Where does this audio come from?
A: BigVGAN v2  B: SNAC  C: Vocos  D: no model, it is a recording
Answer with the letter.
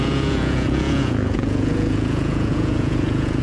C